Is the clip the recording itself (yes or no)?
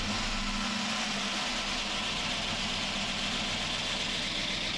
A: yes